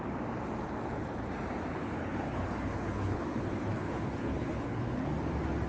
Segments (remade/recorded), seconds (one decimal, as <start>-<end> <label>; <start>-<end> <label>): 0.0-1.7 recorded; 1.7-5.1 remade; 5.1-5.7 recorded